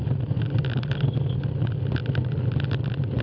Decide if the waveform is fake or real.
real